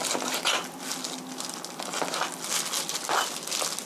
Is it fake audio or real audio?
real